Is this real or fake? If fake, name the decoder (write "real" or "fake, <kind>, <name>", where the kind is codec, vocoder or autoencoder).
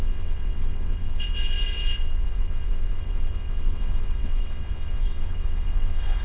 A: fake, vocoder, WaveNeXt